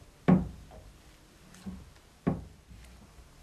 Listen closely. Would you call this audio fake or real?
real